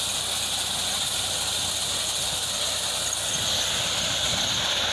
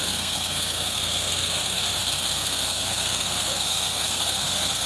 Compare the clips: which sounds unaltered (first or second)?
first